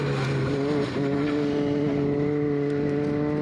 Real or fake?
real